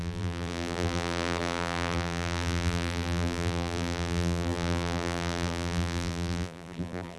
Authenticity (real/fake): fake